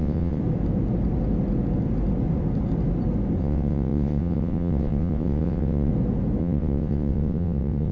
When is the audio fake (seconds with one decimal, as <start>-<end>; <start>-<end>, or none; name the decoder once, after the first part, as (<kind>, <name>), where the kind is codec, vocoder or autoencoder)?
0.0-0.4 (vocoder, WaveNeXt); 3.4-5.9; 6.4-7.9